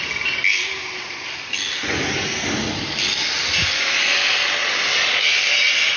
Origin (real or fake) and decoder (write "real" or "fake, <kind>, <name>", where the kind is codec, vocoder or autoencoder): real